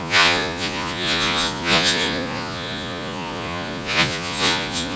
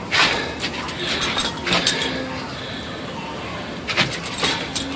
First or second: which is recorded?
second